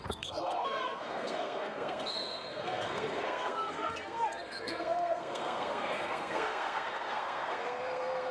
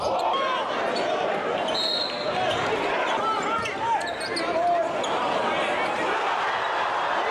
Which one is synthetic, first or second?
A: first